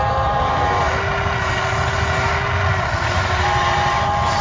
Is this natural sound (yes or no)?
yes